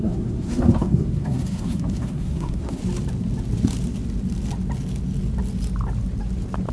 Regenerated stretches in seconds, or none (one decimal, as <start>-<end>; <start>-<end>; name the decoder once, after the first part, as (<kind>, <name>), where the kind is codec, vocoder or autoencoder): 0.0-2.8 (codec, SNAC)